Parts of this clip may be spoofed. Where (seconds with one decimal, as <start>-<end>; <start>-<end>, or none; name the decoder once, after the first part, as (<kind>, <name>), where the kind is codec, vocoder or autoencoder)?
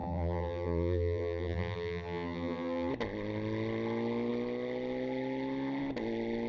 0.0-2.9 (vocoder, BigVGAN v2)